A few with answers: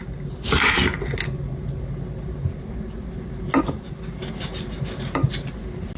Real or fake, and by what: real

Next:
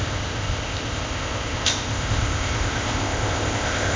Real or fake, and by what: fake, codec, ZipCodec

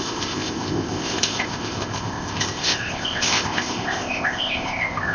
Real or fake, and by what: fake, codec, ZipCodec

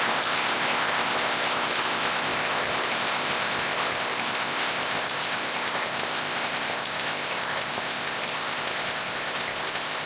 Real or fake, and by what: fake, codec, ZipCodec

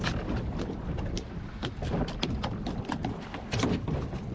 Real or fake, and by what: real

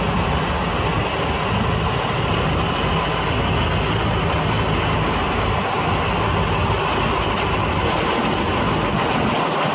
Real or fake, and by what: real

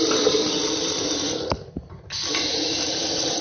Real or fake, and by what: real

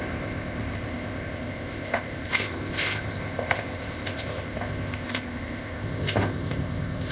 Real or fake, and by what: fake, codec, ZipCodec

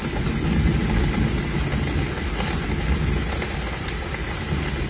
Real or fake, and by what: real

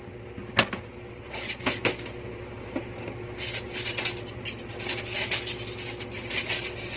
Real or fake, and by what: real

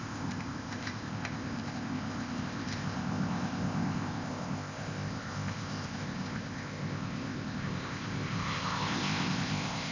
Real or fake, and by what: fake, codec, ZipCodec